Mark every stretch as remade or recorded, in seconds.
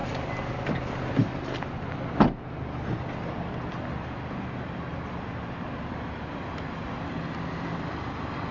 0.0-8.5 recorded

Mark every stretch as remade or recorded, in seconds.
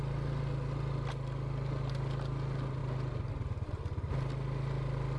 0.0-5.2 recorded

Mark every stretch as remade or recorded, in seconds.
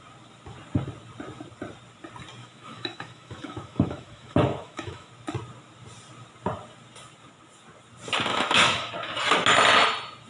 0.0-2.4 recorded; 2.4-5.1 remade; 5.1-8.3 recorded; 8.3-8.9 remade; 8.9-10.3 recorded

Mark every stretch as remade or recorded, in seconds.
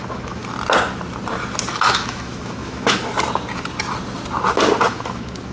0.0-0.4 remade; 0.4-1.9 recorded; 1.9-3.0 remade; 3.0-4.9 recorded; 4.9-5.5 remade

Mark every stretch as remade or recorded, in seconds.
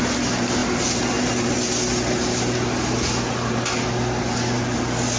0.0-5.2 recorded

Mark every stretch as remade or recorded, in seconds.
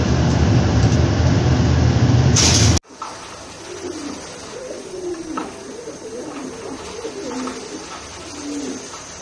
0.0-9.2 recorded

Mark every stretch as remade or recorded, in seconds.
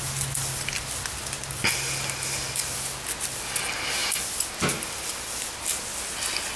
0.0-6.6 recorded